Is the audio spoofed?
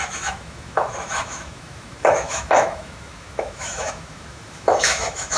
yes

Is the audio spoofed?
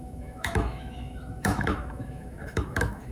yes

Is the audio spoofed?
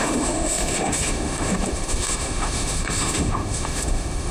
yes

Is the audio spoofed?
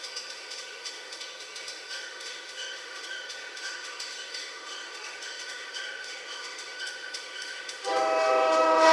yes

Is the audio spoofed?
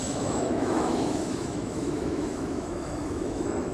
yes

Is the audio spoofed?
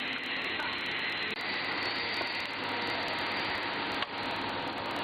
no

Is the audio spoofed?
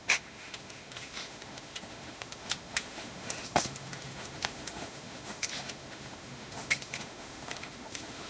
yes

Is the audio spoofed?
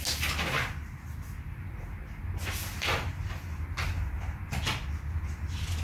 no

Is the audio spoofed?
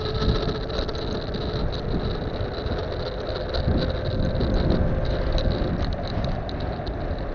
no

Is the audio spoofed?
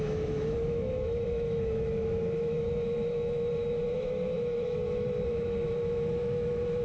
yes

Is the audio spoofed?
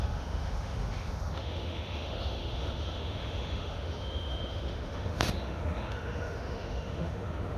yes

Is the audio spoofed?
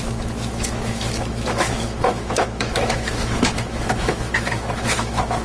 yes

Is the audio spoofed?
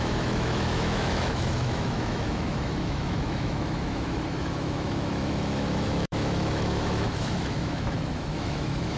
yes